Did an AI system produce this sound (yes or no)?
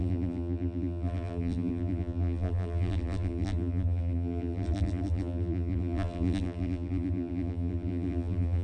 yes